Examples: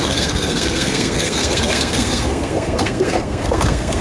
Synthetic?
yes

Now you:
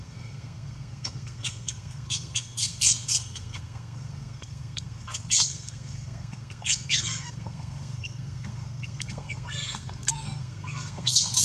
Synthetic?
yes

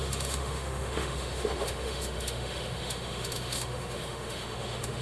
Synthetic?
yes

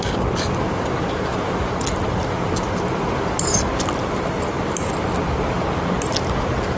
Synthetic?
no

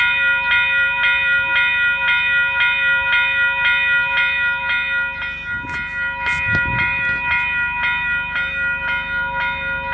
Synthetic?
no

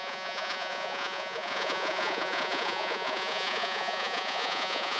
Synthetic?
yes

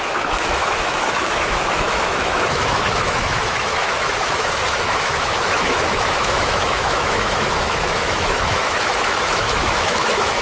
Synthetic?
yes